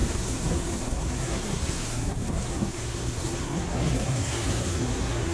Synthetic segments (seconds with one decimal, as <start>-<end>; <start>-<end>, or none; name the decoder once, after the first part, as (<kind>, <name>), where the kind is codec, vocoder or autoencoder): 0.0-5.3 (codec, SNAC)